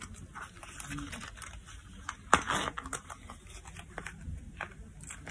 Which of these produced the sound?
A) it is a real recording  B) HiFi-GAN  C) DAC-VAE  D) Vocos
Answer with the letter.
A